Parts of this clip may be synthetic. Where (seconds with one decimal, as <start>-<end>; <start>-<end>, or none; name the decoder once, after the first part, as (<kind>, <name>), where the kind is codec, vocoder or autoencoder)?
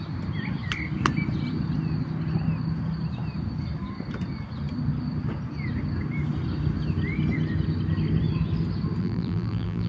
9.0-9.9 (vocoder, BigVGAN v2)